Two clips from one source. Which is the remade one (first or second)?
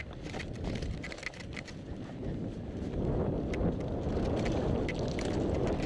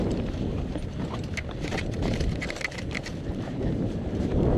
second